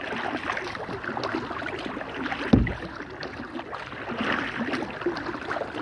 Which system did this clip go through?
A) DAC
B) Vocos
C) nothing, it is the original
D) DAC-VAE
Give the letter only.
C